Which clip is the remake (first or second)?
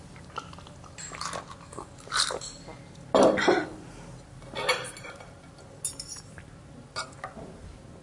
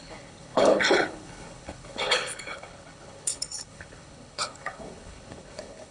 second